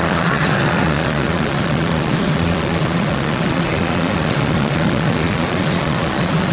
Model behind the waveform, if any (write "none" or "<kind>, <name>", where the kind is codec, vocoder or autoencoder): vocoder, Vocos